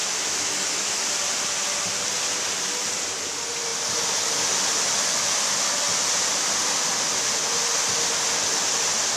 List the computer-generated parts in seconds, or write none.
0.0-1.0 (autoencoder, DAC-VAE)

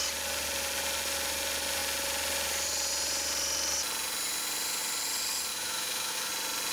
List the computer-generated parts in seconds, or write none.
5.5-6.3 (autoencoder, DAC-VAE)

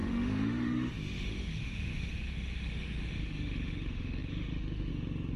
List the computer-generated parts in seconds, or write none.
0.0-5.4 (autoencoder, DAC-VAE)

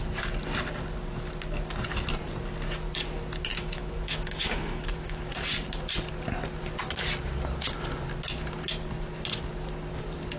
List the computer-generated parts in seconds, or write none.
3.5-5.3 (autoencoder, DAC-VAE)

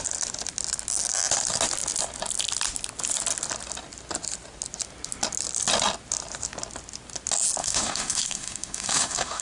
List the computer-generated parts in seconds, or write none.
7.6-9.4 (autoencoder, DAC-VAE)